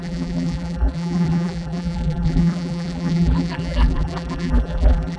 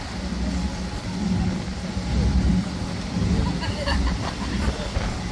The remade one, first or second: first